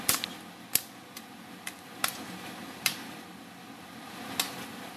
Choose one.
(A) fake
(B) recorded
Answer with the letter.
B